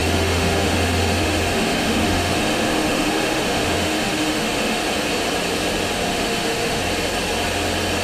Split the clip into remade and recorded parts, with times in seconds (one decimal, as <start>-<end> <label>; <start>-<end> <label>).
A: 0.0-4.8 remade; 4.8-6.1 recorded; 6.1-6.8 remade; 6.8-8.0 recorded